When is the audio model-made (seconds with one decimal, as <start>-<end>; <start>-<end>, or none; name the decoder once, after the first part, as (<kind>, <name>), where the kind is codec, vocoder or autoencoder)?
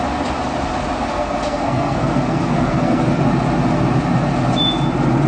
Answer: 1.1-3.2 (codec, SNAC)